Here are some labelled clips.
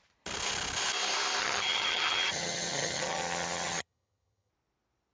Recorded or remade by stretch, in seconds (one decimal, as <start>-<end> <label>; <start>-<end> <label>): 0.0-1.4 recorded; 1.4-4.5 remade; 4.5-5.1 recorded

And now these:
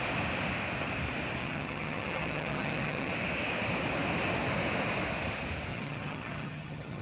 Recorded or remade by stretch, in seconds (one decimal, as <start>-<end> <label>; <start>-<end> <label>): 0.0-1.4 recorded; 1.4-3.1 remade; 3.1-5.7 recorded; 5.7-7.0 remade

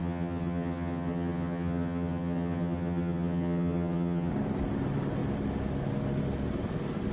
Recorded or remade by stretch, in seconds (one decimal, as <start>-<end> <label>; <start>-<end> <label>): 0.0-4.3 remade; 4.3-7.1 recorded

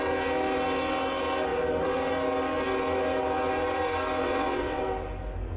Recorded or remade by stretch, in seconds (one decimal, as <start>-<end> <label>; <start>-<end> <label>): 0.0-4.2 recorded; 4.2-4.8 remade; 4.8-5.6 recorded

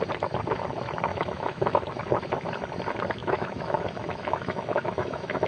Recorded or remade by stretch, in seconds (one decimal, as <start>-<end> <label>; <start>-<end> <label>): 0.0-1.1 recorded; 1.1-2.0 remade; 2.0-3.2 recorded; 3.2-5.5 remade

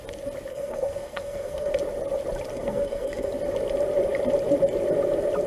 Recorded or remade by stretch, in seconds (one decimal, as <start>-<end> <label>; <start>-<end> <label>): 0.0-0.5 recorded; 0.5-1.7 remade; 1.7-2.5 recorded; 2.5-3.3 remade; 3.3-5.5 recorded

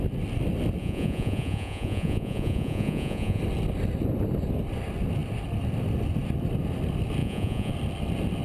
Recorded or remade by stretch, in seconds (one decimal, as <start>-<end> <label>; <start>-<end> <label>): 0.0-0.8 recorded; 0.8-3.4 remade; 3.4-7.2 recorded; 7.2-7.7 remade; 7.7-8.4 recorded

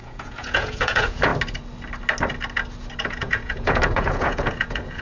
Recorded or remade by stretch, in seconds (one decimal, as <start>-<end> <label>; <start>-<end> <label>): 0.0-1.3 remade; 1.3-3.0 recorded; 3.0-5.0 remade